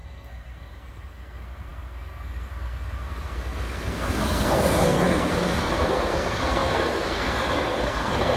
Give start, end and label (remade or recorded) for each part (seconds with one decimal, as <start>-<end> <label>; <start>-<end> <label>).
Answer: 0.0-8.4 remade